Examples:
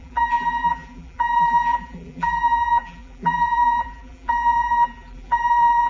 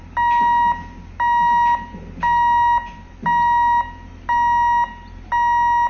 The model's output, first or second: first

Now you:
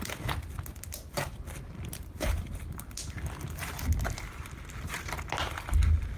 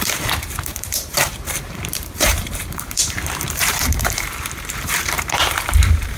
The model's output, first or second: second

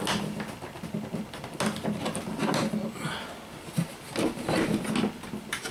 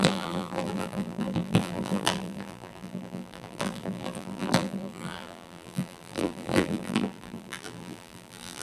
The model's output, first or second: second